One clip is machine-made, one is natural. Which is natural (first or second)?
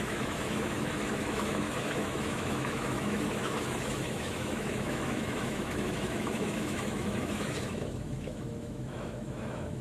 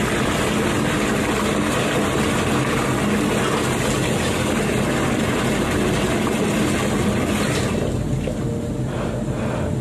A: second